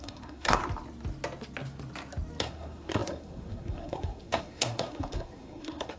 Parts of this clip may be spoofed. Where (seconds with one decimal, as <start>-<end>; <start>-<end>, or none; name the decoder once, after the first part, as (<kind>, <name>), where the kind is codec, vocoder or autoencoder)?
0.0-0.6 (codec, SNAC); 2.4-6.0